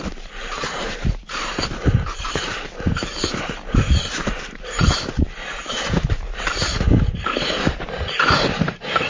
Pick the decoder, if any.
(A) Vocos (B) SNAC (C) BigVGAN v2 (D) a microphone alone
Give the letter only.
C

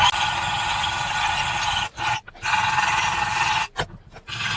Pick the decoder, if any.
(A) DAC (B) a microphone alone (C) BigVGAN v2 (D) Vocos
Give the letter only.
B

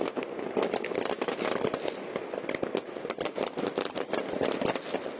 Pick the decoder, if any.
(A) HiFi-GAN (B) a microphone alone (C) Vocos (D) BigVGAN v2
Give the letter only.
B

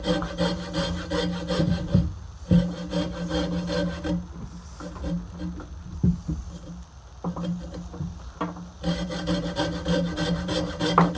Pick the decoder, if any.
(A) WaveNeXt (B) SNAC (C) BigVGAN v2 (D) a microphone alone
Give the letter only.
D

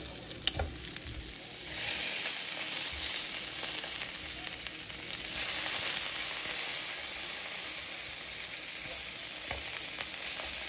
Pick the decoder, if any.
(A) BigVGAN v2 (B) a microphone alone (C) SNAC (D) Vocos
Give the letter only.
B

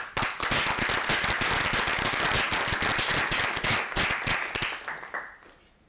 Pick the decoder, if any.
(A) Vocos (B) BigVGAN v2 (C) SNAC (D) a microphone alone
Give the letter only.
D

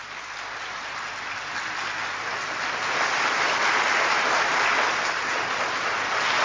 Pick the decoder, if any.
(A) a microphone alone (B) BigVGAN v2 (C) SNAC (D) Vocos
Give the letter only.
A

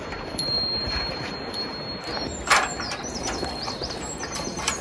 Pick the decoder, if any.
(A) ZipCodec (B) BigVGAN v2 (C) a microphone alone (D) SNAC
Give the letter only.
B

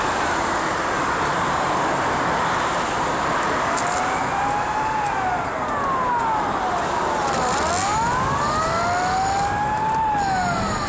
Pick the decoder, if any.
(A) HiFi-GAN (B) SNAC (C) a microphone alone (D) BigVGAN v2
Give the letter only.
C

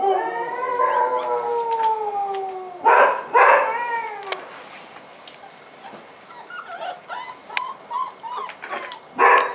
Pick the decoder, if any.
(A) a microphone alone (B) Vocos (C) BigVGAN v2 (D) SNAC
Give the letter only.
A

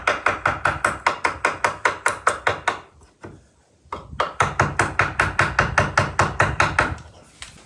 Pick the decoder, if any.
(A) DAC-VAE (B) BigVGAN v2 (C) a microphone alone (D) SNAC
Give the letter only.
C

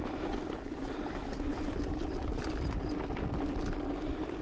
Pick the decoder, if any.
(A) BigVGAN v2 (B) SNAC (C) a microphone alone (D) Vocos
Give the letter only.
A